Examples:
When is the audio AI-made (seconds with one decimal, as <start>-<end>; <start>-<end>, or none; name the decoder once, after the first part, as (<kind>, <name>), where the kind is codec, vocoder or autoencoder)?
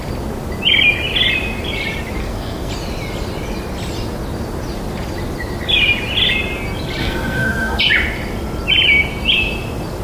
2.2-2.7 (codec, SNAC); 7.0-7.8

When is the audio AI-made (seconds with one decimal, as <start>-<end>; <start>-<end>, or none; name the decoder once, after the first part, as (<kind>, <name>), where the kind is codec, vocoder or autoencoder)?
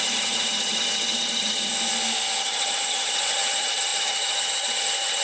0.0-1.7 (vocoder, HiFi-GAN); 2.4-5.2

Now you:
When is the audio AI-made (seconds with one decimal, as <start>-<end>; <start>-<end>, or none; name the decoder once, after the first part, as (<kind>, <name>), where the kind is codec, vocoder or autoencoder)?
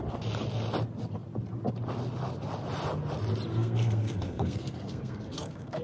3.5-5.8 (codec, SNAC)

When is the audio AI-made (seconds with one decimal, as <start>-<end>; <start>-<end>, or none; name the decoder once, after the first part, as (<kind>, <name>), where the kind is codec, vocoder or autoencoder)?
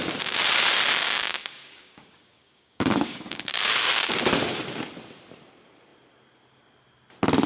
1.0-4.1 (codec, DAC)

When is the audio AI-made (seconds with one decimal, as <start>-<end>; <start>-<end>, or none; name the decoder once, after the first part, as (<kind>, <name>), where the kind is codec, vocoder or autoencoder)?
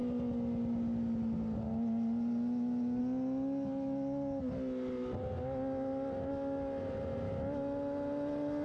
none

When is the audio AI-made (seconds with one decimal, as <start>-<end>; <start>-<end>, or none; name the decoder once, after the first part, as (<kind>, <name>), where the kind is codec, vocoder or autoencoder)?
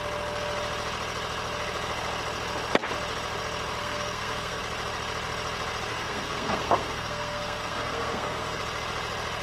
3.8-4.6 (codec, SNAC); 5.9-8.6